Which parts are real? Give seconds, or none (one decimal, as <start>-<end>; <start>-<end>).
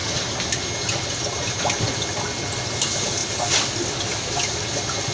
0.0-5.1